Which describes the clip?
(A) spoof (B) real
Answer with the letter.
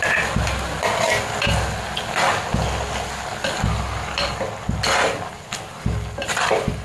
B